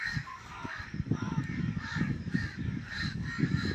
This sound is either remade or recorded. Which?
remade